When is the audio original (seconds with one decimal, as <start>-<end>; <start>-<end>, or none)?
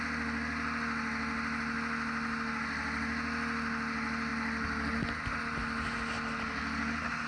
0.0-7.3